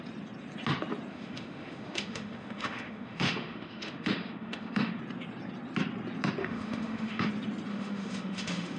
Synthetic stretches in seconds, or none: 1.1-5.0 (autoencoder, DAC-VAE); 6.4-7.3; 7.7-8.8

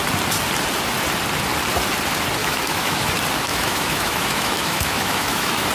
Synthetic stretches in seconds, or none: 2.4-3.1 (autoencoder, DAC-VAE); 3.5-5.7